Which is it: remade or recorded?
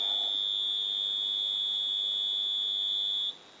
recorded